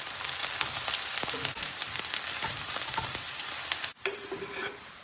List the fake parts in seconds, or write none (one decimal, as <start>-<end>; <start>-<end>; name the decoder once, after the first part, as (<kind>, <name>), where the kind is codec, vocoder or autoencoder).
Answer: none